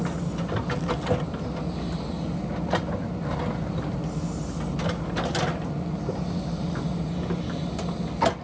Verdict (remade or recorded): recorded